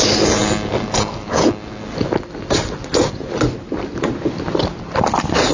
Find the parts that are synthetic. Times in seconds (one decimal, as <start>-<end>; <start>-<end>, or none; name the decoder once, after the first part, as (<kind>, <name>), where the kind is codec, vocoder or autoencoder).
none